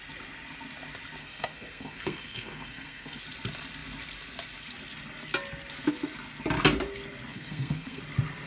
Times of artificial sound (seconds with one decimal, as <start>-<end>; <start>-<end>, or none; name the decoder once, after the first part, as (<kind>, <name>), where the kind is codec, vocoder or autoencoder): 1.2-3.2 (codec, SNAC); 7.3-8.0